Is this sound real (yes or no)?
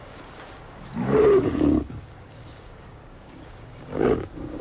no